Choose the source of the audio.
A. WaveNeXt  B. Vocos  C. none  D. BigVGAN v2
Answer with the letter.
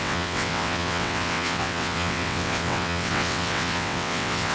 A